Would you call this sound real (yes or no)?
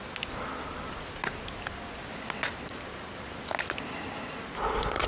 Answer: yes